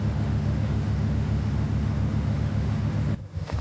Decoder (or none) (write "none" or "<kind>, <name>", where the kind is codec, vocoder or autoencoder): autoencoder, DAC-VAE